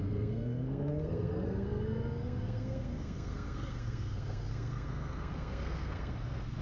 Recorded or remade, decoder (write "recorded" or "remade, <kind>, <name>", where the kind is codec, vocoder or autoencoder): remade, codec, SNAC